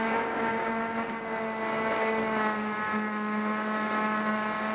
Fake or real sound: fake